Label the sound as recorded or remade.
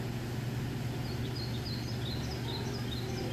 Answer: recorded